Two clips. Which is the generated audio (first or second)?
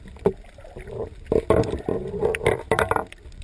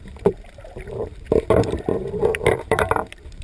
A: second